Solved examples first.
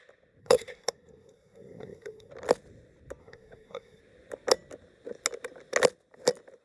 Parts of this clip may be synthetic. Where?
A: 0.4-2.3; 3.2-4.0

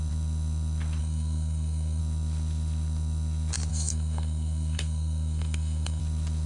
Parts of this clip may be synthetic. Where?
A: 1.0-2.0; 3.7-6.0

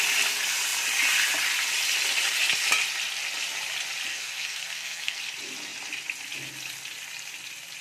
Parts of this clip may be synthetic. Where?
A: 4.1-5.2

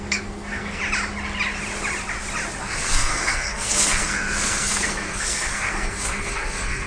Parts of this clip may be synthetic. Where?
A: 0.0-0.8; 2.6-6.9

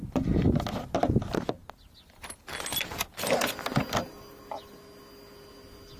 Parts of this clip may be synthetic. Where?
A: none

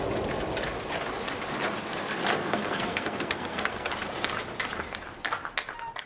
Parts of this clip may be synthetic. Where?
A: 2.3-3.9